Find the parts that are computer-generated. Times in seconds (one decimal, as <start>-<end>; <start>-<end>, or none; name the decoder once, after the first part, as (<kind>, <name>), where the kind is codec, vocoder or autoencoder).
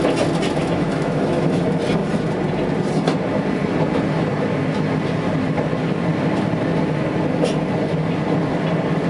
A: 0.6-1.6 (autoencoder, DAC-VAE)